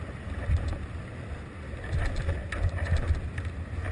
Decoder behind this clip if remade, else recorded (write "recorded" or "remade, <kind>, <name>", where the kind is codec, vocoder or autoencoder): recorded